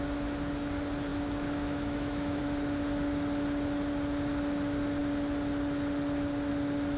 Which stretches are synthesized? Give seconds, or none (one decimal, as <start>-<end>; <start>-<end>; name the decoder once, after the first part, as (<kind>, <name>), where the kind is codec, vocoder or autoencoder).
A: 1.1-2.4 (autoencoder, DAC-VAE)